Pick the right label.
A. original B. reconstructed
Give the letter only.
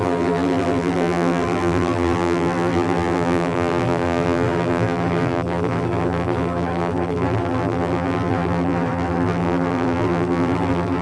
B